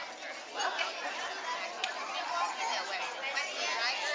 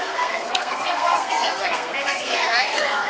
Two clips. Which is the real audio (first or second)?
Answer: first